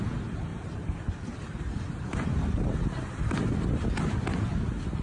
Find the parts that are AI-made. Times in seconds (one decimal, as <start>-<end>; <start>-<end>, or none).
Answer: 0.5-3.5